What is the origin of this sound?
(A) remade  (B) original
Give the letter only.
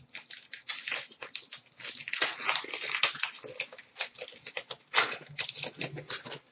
B